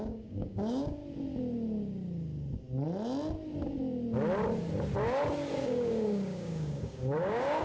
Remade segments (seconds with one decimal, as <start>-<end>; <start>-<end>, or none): 0.0-1.0; 5.6-7.6